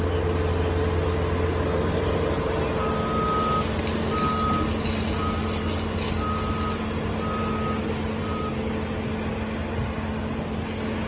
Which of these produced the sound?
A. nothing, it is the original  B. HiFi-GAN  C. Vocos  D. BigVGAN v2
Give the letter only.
A